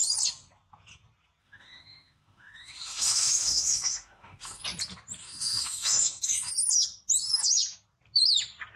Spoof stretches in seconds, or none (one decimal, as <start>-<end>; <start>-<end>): 1.4-4.6; 5.2-6.5